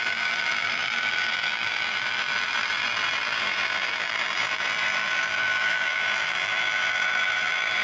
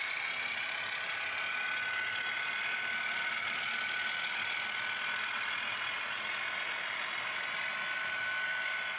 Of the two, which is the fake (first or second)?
first